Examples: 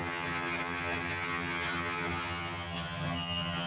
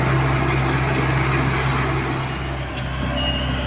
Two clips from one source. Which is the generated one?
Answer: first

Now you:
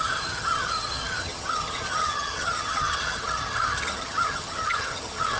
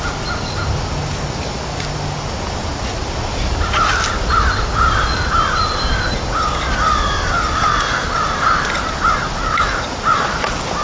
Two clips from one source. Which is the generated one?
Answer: first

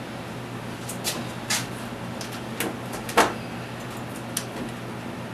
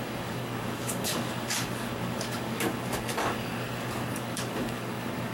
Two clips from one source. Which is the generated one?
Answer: second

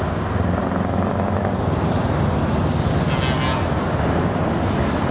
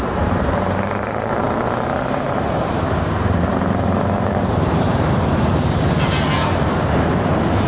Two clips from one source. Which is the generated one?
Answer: second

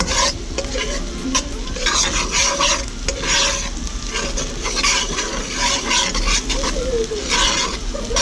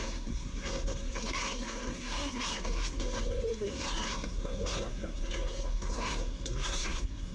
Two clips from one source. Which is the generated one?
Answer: second